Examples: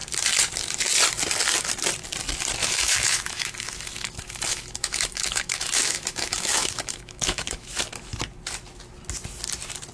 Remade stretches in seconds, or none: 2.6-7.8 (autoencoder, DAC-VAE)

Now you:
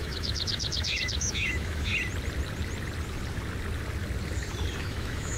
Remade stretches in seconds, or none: 0.0-1.9 (autoencoder, DAC-VAE); 4.8-5.4